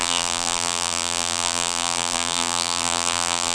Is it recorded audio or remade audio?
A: remade